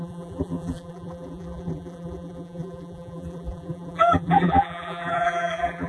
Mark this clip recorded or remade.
remade